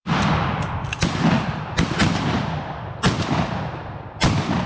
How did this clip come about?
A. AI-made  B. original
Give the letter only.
A